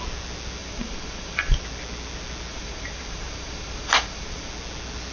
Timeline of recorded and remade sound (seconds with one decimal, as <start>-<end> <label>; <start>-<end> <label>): 0.0-0.6 recorded; 0.6-1.6 remade; 1.6-2.5 recorded; 2.5-4.5 remade; 4.5-5.1 recorded